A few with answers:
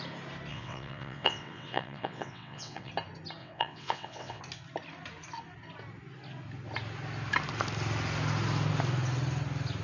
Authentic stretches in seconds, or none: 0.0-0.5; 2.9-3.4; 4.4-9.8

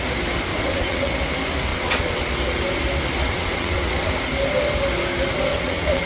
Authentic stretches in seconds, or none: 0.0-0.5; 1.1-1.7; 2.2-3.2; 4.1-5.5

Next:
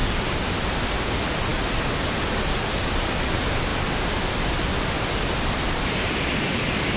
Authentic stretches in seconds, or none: 0.0-7.0